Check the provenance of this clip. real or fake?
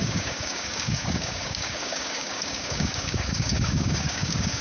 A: fake